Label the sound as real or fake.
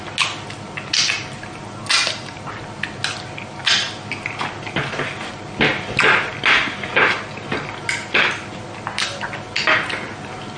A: real